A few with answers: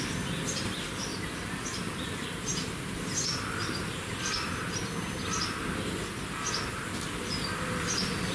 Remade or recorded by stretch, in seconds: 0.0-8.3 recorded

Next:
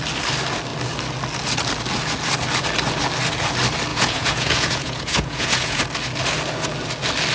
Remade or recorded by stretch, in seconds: 0.0-3.9 recorded; 3.9-5.8 remade; 5.8-7.3 recorded

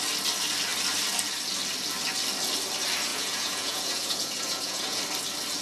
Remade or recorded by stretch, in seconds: 0.0-3.1 recorded; 3.1-5.0 remade; 5.0-5.6 recorded

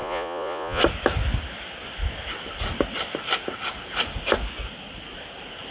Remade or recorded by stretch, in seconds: 0.0-0.8 remade; 0.8-5.7 recorded

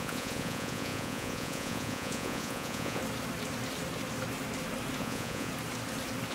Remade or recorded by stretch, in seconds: 0.0-3.0 remade; 3.0-5.0 recorded; 5.0-5.5 remade; 5.5-6.3 recorded

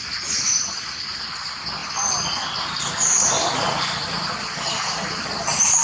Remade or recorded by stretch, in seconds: 0.0-5.8 recorded

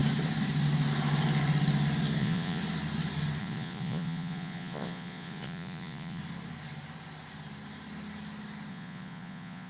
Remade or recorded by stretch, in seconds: 0.0-2.2 recorded; 2.2-2.6 remade; 2.6-3.4 recorded; 3.4-6.2 remade; 6.2-8.7 recorded; 8.7-9.7 remade